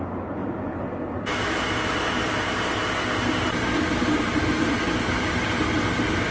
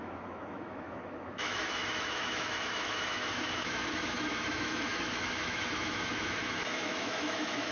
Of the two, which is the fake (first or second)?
second